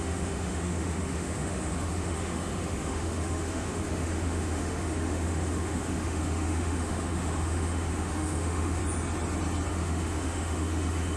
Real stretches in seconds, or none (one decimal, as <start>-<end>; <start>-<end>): 8.8-9.7